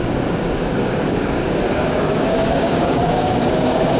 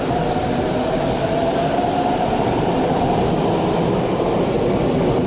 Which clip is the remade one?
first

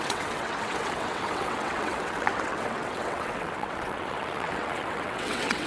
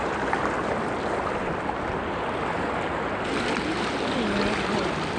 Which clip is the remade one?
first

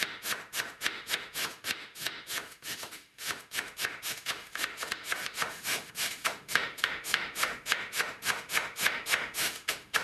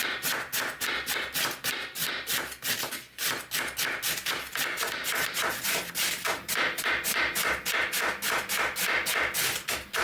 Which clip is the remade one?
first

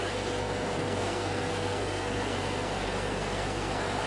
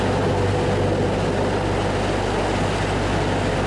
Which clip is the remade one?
first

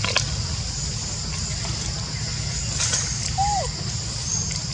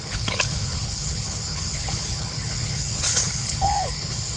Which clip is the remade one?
second